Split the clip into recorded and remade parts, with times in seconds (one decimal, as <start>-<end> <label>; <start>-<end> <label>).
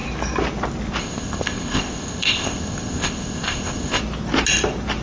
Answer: 0.0-1.0 recorded; 1.0-4.0 remade; 4.0-5.0 recorded